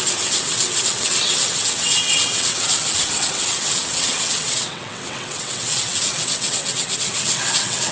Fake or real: fake